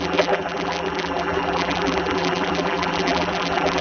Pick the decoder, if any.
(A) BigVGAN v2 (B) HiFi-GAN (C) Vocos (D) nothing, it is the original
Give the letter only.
A